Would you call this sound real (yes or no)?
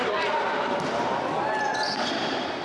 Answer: yes